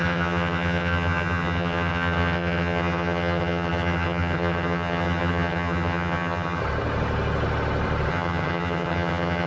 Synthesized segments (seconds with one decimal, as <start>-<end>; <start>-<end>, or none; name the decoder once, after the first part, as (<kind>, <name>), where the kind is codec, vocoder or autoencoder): 0.0-6.6 (vocoder, HiFi-GAN); 8.1-9.5